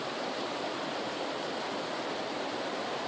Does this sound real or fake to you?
real